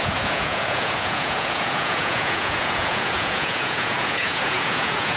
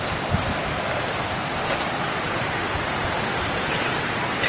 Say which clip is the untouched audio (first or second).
second